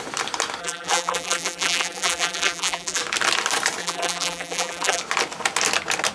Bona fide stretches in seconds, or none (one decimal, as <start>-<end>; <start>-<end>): 0.0-0.6; 3.0-3.8; 5.0-6.1